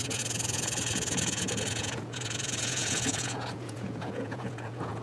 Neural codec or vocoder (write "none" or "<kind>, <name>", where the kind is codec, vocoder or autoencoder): vocoder, Vocos